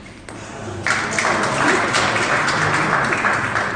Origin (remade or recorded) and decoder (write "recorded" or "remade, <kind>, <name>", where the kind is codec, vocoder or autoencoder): recorded